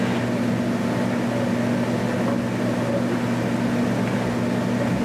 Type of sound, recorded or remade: recorded